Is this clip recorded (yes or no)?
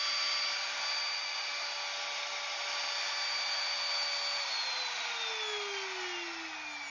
yes